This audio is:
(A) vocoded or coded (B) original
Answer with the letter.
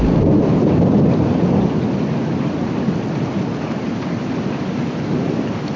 B